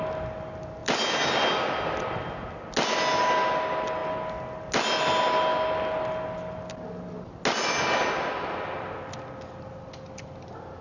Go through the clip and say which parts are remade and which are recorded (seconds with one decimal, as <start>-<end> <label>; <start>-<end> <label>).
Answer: 0.0-10.8 recorded